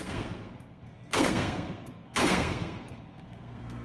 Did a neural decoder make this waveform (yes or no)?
yes